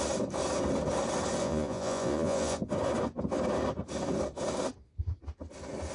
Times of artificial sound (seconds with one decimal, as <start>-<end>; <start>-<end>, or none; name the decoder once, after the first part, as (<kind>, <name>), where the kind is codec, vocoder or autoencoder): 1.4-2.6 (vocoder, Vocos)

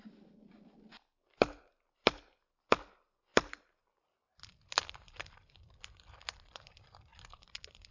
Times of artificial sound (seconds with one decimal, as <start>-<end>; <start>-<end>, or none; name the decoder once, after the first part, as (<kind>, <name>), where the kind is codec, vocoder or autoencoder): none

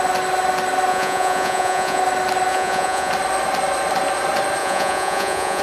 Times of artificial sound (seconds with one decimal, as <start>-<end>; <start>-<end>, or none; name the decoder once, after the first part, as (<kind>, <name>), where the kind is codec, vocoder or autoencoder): 0.9-2.0 (vocoder, Vocos); 2.5-3.1; 4.6-5.6

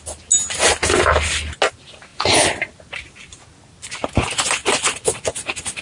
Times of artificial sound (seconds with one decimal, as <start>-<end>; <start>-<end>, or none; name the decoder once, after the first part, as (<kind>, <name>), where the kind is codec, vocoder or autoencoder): none

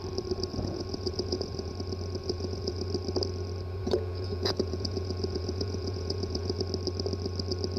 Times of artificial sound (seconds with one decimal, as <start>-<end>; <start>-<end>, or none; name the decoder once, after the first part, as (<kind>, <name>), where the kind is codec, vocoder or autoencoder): 0.5-1.7 (vocoder, Vocos); 2.2-2.8; 3.8-6.6